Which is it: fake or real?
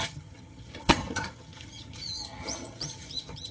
fake